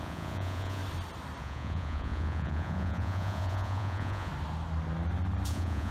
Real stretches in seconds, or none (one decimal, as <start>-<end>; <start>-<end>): 0.8-1.4; 4.3-5.5